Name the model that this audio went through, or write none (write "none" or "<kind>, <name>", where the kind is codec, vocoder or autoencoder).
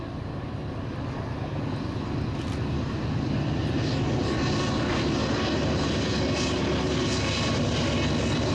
none